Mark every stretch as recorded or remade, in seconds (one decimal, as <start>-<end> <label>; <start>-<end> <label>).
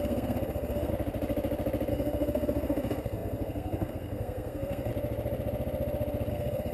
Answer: 0.0-0.9 remade; 0.9-1.9 recorded; 1.9-4.9 remade; 4.9-6.3 recorded; 6.3-6.7 remade